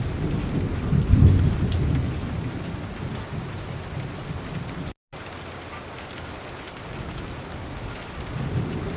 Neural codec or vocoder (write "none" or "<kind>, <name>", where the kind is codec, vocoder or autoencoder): none